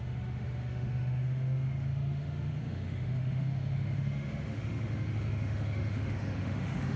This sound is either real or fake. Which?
fake